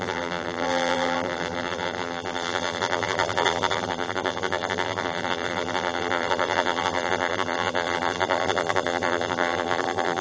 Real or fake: fake